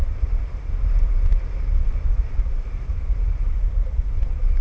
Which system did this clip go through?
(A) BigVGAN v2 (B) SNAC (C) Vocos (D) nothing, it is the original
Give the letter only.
A